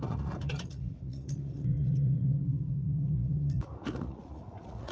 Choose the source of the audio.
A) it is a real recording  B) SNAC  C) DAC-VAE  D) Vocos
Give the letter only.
D